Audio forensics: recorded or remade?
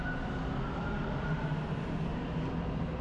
recorded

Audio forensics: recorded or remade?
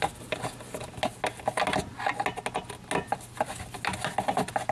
recorded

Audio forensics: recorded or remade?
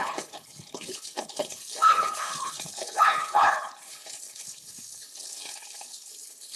remade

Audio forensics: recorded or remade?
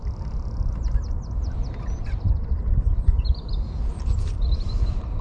recorded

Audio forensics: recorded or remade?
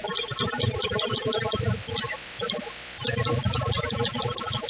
remade